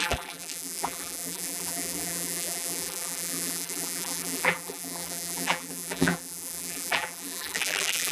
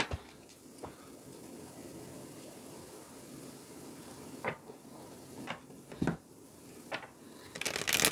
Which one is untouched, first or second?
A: second